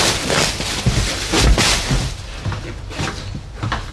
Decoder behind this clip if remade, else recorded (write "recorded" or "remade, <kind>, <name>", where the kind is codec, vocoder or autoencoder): remade, vocoder, BigVGAN v2